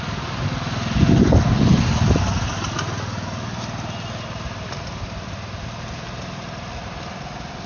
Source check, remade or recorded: recorded